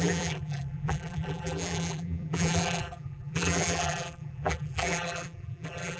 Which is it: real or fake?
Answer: fake